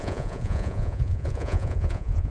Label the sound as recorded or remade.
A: remade